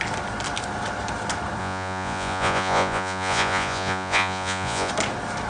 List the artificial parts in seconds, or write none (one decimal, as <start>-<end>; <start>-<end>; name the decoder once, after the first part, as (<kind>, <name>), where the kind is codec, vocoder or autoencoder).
1.6-4.9 (vocoder, Vocos)